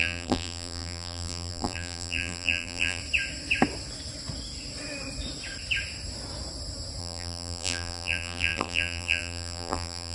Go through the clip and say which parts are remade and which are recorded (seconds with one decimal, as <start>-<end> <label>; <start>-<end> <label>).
0.0-3.0 remade; 3.0-7.0 recorded; 7.0-10.1 remade